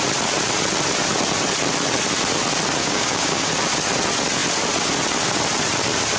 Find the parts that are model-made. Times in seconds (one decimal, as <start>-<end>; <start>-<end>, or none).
2.8-3.5